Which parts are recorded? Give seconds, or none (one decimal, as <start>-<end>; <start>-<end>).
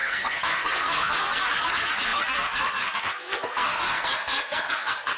none